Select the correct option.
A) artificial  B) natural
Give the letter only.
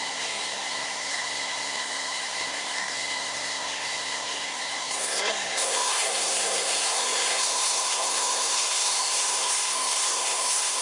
A